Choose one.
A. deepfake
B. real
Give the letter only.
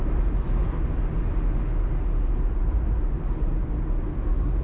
B